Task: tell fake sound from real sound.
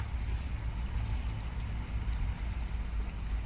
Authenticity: real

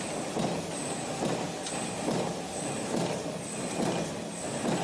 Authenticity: real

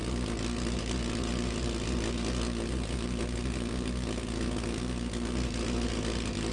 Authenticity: real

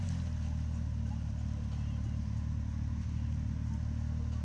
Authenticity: real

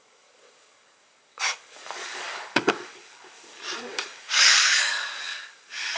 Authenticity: fake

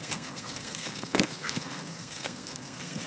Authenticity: fake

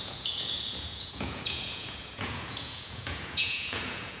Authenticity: fake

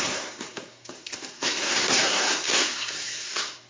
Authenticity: fake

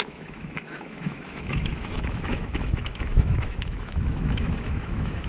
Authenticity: fake